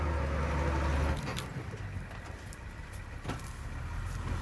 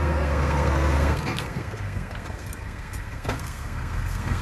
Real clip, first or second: first